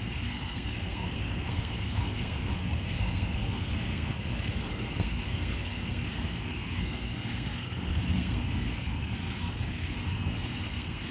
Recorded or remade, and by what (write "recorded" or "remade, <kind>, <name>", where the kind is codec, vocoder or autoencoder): remade, codec, SNAC